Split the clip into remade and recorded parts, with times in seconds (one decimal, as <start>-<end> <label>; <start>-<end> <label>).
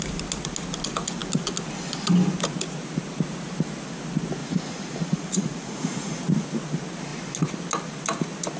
0.0-4.4 recorded; 4.4-6.2 remade; 6.2-8.6 recorded